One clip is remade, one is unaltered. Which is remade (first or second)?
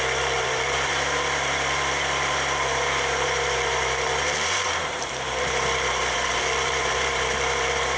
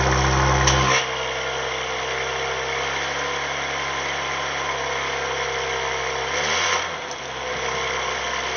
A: first